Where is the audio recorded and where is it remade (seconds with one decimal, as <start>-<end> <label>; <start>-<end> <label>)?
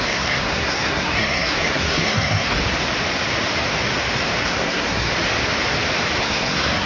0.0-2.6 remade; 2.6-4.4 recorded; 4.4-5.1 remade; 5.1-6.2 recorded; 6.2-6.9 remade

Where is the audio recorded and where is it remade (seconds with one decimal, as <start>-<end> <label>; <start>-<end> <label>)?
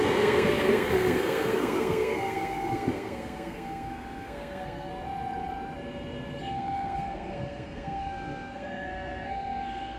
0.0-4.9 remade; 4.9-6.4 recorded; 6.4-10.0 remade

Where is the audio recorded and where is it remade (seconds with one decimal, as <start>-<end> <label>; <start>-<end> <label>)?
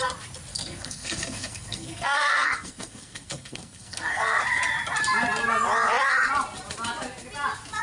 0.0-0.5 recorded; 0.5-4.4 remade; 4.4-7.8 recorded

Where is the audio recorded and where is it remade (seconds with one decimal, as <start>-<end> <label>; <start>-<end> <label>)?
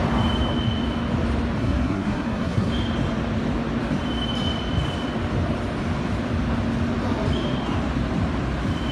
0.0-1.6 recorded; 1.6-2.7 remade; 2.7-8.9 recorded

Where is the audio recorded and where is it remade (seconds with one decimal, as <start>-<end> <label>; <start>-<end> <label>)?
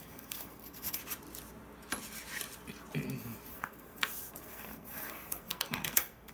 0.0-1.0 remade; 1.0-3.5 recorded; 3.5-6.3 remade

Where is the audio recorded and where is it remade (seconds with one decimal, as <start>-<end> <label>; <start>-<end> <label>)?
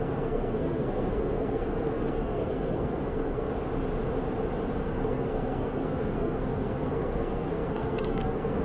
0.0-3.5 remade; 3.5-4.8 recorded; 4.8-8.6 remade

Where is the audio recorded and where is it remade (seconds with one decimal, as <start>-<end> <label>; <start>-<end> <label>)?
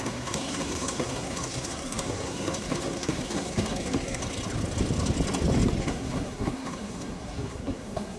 0.0-4.2 remade; 4.2-5.8 recorded; 5.8-8.2 remade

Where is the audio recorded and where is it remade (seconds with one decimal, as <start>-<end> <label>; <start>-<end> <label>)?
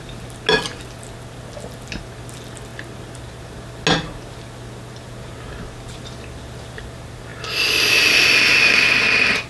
0.0-9.5 recorded